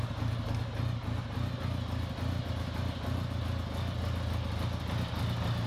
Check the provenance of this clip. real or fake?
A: real